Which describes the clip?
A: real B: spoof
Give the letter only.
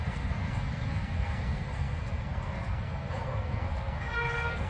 B